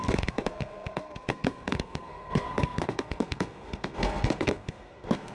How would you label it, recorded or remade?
remade